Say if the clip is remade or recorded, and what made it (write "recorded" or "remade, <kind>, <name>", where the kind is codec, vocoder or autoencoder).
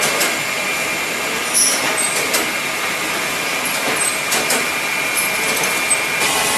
recorded